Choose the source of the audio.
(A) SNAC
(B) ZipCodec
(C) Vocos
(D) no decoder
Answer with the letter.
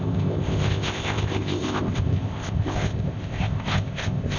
B